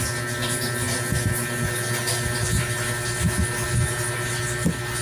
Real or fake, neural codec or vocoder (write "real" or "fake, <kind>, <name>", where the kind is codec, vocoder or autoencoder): real